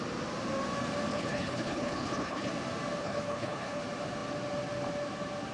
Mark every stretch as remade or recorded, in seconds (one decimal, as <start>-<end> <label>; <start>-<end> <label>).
0.0-1.1 recorded; 1.1-2.5 remade; 2.5-3.0 recorded; 3.0-3.8 remade; 3.8-5.5 recorded